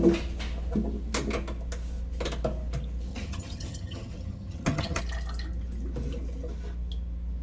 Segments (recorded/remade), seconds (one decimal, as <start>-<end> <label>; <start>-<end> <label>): 0.0-3.1 recorded; 3.1-5.0 remade; 5.0-7.4 recorded